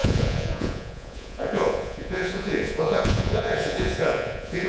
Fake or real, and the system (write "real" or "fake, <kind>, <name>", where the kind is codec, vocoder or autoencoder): fake, vocoder, Vocos